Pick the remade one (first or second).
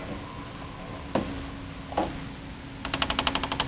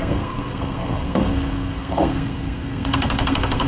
second